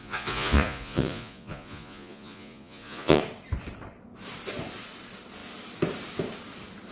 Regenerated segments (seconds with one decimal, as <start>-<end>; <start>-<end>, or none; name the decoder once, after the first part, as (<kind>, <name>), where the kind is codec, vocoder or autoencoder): 0.0-3.2 (vocoder, Vocos)